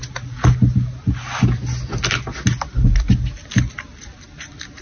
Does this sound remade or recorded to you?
recorded